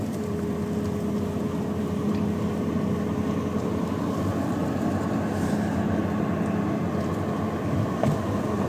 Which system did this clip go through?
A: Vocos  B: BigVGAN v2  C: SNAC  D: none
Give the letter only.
D